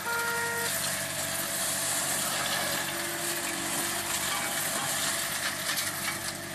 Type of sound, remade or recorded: recorded